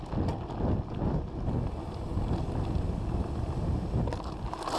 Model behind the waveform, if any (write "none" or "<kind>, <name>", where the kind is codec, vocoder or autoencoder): none